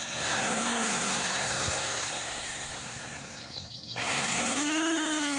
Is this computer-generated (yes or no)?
yes